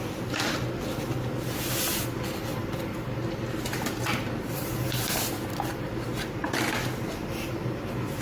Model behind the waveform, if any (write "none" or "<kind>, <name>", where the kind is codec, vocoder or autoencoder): none